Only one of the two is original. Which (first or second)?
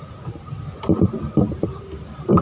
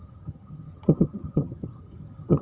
first